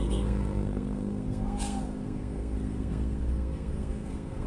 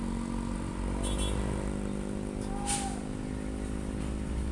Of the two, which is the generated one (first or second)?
first